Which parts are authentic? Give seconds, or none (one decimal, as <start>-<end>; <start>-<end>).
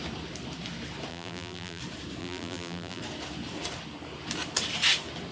0.0-1.1; 1.8-2.2; 3.0-5.3